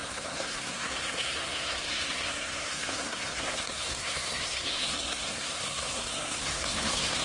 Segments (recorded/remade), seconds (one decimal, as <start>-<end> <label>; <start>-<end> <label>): 0.0-7.2 remade